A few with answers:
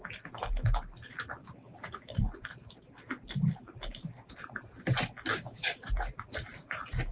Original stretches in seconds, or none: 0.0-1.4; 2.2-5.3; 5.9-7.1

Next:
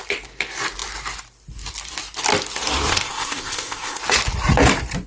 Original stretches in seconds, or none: 0.0-2.9; 4.0-5.1

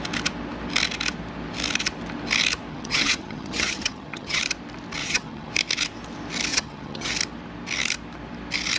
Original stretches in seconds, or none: 0.0-2.7; 4.4-5.0; 5.5-6.5; 7.1-8.8

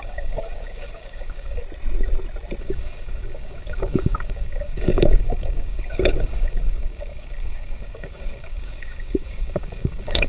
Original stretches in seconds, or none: 1.6-2.6